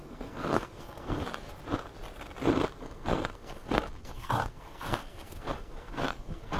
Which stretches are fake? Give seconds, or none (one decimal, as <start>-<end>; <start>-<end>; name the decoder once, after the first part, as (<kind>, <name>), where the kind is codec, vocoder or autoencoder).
0.0-1.2 (codec, SNAC); 2.8-6.6